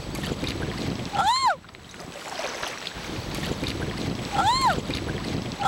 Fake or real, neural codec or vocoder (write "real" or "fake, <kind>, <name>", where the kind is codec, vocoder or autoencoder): real